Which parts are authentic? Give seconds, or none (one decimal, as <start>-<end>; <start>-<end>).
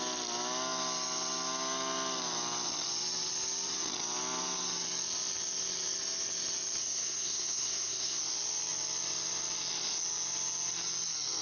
0.0-6.8; 8.2-11.4